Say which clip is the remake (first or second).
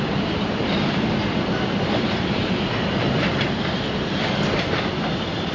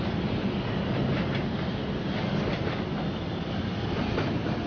first